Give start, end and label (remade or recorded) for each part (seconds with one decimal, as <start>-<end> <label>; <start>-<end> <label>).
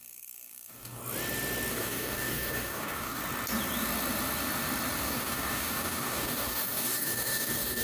0.0-1.0 remade; 1.0-1.7 recorded; 1.7-3.2 remade; 3.2-5.0 recorded; 5.0-7.8 remade